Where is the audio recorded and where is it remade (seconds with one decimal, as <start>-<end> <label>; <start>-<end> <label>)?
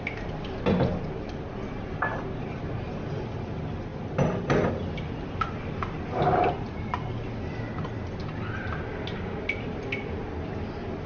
0.0-11.1 recorded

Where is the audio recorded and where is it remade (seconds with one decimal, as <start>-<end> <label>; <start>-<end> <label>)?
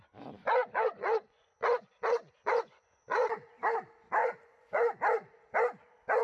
0.0-0.6 recorded; 0.6-3.2 remade; 3.2-4.2 recorded; 4.2-5.0 remade; 5.0-6.2 recorded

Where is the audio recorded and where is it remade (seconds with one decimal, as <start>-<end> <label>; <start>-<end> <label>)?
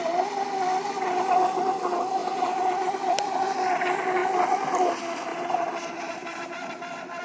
0.0-2.2 recorded; 2.2-3.4 remade; 3.4-5.3 recorded; 5.3-7.2 remade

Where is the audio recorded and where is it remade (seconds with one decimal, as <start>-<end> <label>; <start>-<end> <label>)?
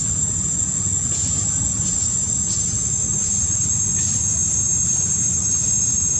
0.0-1.2 recorded; 1.2-1.9 remade; 1.9-4.4 recorded; 4.4-6.2 remade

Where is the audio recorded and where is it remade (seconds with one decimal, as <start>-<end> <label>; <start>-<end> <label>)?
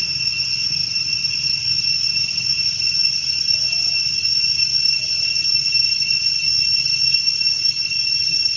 0.0-8.6 recorded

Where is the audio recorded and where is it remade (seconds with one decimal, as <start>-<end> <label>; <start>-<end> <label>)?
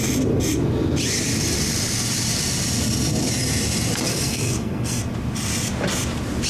0.0-4.1 recorded; 4.1-5.0 remade; 5.0-6.5 recorded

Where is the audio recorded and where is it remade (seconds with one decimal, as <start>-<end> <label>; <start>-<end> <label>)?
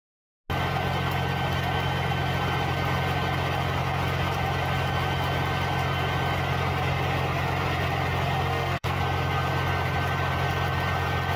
0.0-8.5 recorded; 8.5-9.0 remade; 9.0-11.4 recorded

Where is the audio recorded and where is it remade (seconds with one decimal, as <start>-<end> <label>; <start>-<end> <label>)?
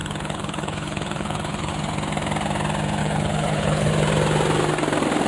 0.0-1.7 remade; 1.7-3.0 recorded; 3.0-3.9 remade; 3.9-5.3 recorded